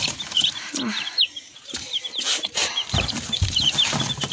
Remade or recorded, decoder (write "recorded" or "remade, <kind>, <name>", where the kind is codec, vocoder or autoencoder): remade, vocoder, BigVGAN v2